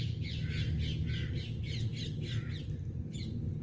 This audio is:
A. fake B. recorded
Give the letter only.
B